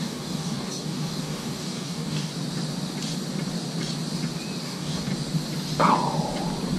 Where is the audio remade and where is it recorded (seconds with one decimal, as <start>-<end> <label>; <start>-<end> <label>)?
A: 0.0-2.3 remade; 2.3-4.6 recorded; 4.6-5.1 remade; 5.1-6.8 recorded